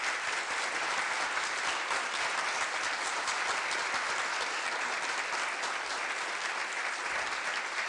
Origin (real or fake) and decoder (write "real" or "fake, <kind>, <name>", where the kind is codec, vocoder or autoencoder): real